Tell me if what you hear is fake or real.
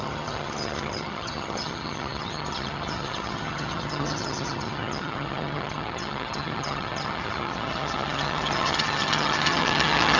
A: fake